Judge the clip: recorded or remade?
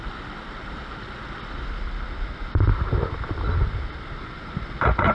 recorded